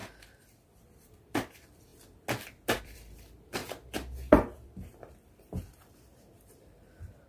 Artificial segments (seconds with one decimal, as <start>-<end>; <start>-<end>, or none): 0.7-1.9; 2.8-3.6; 5.0-7.3